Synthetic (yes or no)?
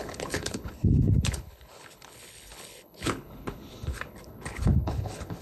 yes